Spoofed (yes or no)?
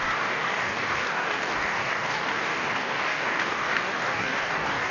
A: yes